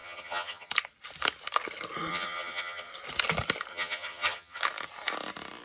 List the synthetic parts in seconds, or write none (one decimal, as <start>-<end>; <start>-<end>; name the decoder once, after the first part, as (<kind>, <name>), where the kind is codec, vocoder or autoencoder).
0.0-0.7 (vocoder, HiFi-GAN); 2.1-2.9; 3.7-4.6